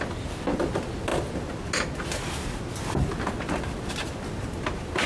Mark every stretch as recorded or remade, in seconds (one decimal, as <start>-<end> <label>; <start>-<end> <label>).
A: 0.0-5.1 recorded